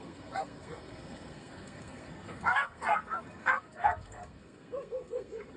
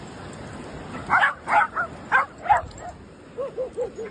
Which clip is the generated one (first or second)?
first